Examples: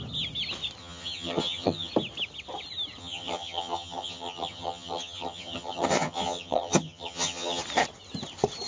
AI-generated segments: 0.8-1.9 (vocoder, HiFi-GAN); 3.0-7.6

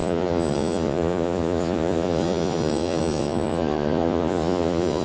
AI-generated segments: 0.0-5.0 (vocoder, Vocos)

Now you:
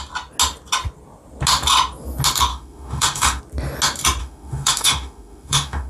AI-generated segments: 2.5-3.4 (autoencoder, DAC-VAE); 4.2-5.9

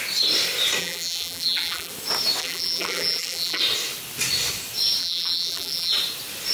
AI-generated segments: 0.8-1.9 (vocoder, BigVGAN v2); 2.4-3.6; 5.0-5.9

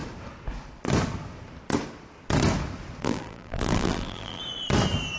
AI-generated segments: 3.0-4.4 (vocoder, BigVGAN v2)

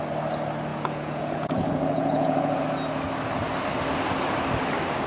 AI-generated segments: 0.7-2.6 (vocoder, Vocos)

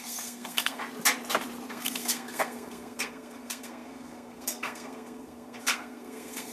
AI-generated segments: 0.0-0.8 (codec, SNAC); 1.7-6.5